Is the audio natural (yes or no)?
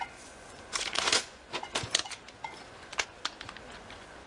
no